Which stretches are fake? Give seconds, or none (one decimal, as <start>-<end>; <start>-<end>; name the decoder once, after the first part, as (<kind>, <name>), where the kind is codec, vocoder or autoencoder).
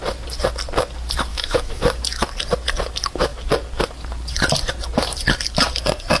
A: 1.3-1.8 (autoencoder, DAC-VAE)